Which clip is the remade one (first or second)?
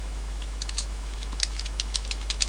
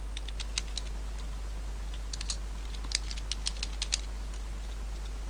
first